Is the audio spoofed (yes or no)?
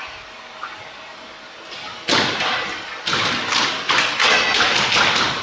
no